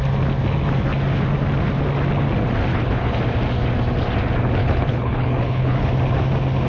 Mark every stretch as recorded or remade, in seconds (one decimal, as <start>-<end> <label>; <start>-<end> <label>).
0.0-2.7 recorded; 2.7-3.2 remade; 3.2-4.6 recorded; 4.6-5.9 remade; 5.9-6.7 recorded